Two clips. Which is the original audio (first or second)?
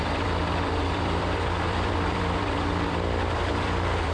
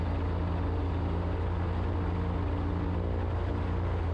second